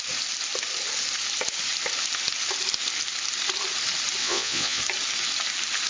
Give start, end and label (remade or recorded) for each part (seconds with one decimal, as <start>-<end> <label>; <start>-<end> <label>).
0.0-4.2 recorded; 4.2-4.8 remade; 4.8-5.9 recorded